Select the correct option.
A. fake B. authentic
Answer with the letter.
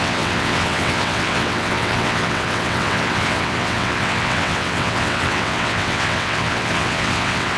A